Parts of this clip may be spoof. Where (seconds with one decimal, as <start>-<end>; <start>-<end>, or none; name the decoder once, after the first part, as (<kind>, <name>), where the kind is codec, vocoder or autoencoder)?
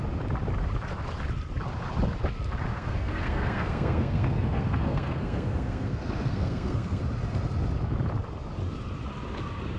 2.7-7.0 (codec, SNAC)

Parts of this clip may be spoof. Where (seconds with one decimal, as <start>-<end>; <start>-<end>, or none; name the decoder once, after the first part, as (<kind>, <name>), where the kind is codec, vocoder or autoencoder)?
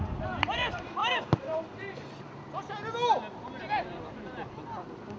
0.0-1.0 (vocoder, BigVGAN v2); 4.1-5.2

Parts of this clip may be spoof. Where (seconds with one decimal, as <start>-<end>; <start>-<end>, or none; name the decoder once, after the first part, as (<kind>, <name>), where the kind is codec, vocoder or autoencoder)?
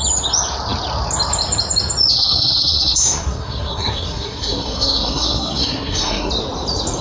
2.1-6.3 (codec, SNAC)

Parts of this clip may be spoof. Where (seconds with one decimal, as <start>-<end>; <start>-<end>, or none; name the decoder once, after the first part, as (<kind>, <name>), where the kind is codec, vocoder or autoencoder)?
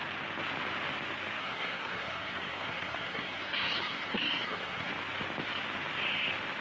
1.4-4.9 (codec, SNAC)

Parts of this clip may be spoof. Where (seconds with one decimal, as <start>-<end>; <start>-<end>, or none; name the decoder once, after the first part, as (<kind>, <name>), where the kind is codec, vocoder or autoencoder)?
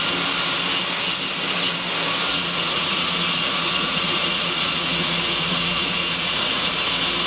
2.3-6.7 (vocoder, Vocos)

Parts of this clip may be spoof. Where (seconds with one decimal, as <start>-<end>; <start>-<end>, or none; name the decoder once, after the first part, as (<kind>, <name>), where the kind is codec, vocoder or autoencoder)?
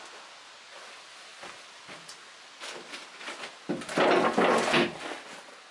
none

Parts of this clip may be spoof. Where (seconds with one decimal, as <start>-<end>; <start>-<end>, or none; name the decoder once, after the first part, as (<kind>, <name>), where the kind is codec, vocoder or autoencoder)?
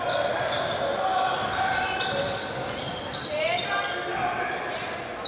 1.1-3.7 (vocoder, BigVGAN v2)